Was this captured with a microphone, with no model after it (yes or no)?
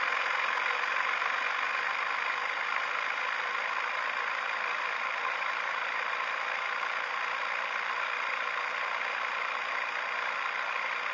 no